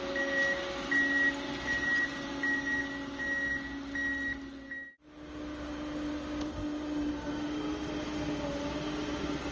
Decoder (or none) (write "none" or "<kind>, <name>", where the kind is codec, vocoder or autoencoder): none